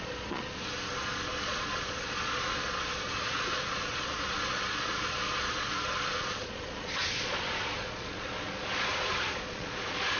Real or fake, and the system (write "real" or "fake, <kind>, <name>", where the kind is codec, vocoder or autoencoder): fake, vocoder, Vocos